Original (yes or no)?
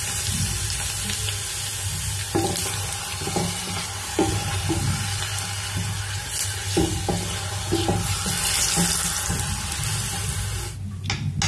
yes